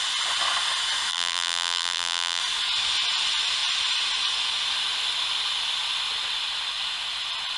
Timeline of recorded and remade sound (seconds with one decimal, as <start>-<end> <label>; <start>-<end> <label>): 0.0-1.1 recorded; 1.1-2.4 remade; 2.4-7.6 recorded